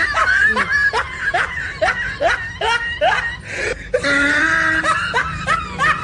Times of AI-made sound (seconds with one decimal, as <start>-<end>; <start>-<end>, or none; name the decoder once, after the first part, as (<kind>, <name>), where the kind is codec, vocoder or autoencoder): none